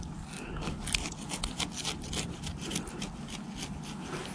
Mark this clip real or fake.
real